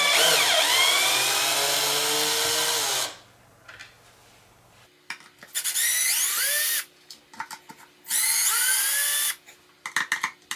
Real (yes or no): yes